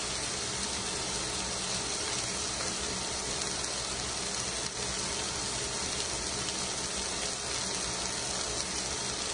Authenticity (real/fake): real